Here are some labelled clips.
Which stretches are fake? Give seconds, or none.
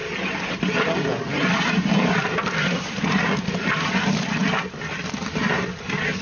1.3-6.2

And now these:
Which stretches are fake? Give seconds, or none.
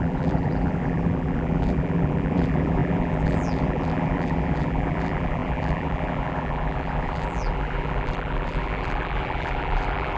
0.0-10.2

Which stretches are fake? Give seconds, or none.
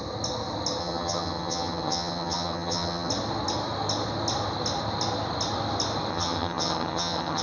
0.8-3.1; 6.1-7.4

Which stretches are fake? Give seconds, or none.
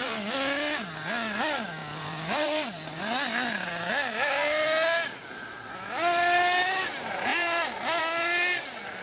1.8-3.0; 7.3-8.0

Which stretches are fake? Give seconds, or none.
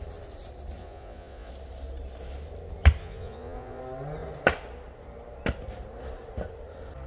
0.8-1.5; 3.0-3.8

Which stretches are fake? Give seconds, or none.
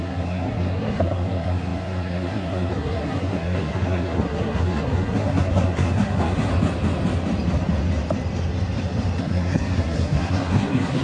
0.0-6.5; 9.2-11.0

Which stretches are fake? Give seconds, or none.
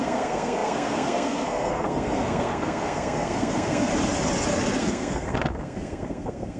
0.0-3.9; 4.8-6.6